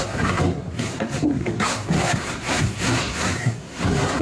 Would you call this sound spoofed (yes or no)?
yes